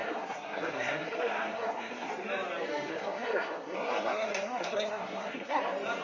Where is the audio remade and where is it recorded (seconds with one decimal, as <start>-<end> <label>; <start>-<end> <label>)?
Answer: 0.0-2.1 remade; 2.1-2.9 recorded; 2.9-5.6 remade; 5.6-6.0 recorded